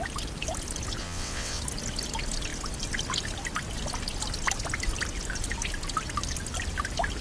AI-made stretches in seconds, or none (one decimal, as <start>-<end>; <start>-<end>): 1.0-1.6